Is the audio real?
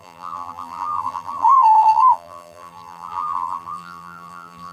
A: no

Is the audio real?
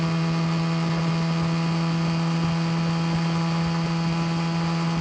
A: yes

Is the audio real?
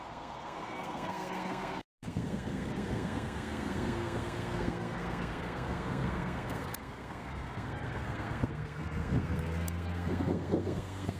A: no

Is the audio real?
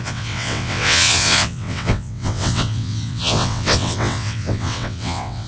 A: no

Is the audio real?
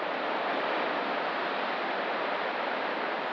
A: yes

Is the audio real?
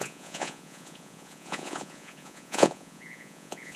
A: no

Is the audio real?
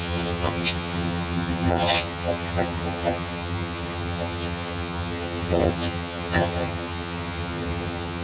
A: no